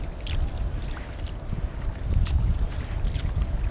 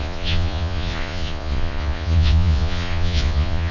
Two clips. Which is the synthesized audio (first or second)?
second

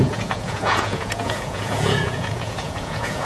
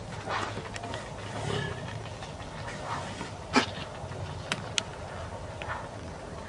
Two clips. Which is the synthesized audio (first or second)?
first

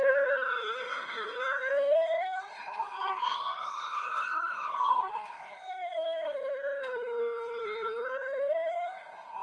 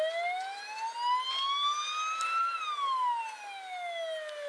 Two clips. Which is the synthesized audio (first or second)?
first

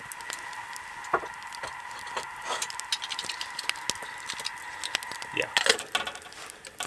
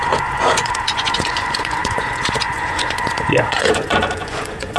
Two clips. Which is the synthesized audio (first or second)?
second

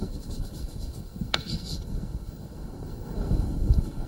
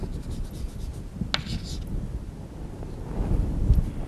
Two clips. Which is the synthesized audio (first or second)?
first